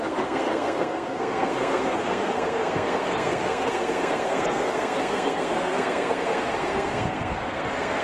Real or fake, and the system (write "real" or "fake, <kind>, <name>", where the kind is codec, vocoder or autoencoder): fake, codec, SNAC